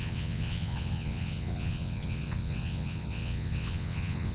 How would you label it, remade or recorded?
remade